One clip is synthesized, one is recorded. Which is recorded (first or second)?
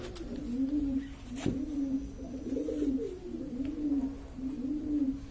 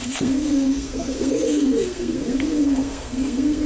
first